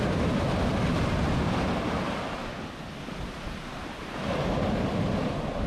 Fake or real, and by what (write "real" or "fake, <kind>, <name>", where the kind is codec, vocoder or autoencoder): real